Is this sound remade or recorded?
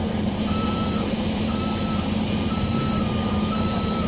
remade